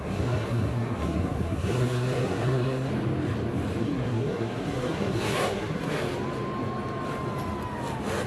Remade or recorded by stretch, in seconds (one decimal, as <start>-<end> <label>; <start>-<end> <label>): 0.0-2.9 remade; 2.9-3.8 recorded; 3.8-6.0 remade; 6.0-8.3 recorded